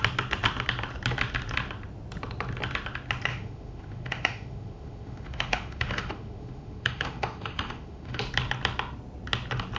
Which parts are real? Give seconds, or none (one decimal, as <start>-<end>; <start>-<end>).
0.0-3.3; 8.2-9.8

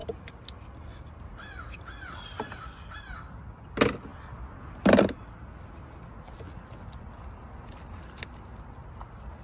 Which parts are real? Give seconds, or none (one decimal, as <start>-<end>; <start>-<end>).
0.0-9.4

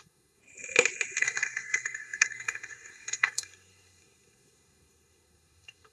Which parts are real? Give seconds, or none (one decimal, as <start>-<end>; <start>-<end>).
0.4-1.2

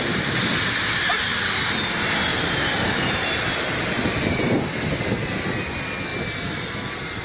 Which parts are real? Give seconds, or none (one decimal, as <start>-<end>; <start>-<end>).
0.0-2.3; 5.0-7.2

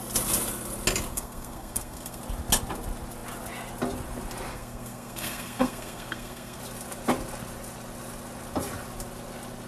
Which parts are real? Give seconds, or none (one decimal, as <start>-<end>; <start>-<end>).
0.0-1.1; 2.2-4.5; 6.6-9.7

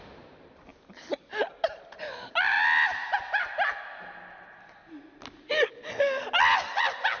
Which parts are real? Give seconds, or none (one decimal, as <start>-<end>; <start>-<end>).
0.0-7.2

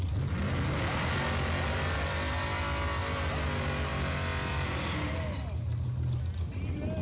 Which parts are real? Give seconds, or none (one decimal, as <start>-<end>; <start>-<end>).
0.0-7.0

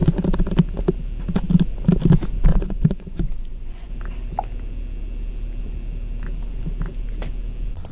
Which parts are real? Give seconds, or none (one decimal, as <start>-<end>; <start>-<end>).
0.0-2.5; 3.9-7.9